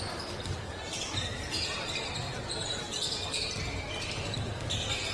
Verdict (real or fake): real